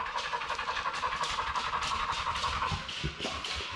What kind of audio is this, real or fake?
real